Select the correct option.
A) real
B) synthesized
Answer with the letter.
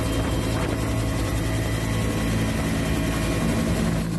A